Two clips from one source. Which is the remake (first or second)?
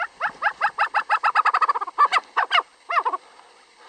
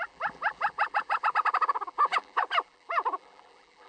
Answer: second